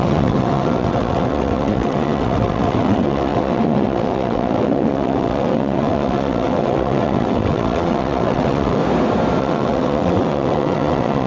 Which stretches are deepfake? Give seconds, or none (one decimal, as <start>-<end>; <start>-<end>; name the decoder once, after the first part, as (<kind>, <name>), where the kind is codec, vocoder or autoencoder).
0.0-8.8 (vocoder, WaveNeXt); 9.4-11.3